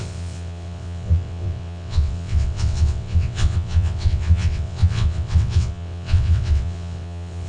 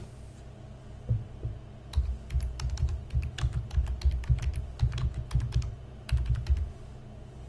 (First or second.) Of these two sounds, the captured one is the second